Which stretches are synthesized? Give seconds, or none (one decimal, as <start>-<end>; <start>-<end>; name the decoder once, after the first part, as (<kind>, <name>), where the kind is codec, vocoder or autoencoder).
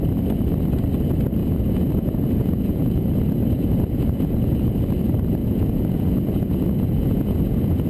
1.4-4.8 (vocoder, Vocos); 5.4-7.9